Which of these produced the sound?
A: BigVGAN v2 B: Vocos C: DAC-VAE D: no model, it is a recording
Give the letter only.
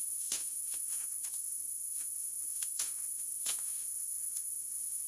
C